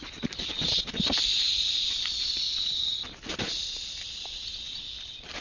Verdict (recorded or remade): recorded